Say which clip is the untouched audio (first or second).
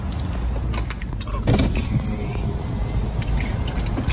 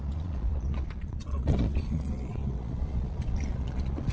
first